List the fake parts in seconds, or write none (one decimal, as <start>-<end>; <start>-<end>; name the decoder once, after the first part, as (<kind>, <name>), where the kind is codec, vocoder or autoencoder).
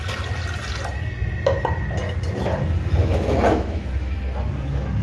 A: 3.0-4.2 (autoencoder, DAC-VAE)